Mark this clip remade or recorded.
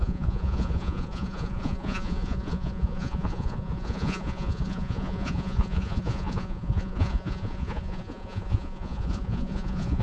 remade